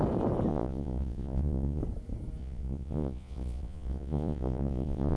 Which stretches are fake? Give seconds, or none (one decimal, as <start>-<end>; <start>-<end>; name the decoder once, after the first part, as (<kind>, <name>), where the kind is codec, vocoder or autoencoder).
0.5-1.8 (vocoder, Vocos); 2.4-5.2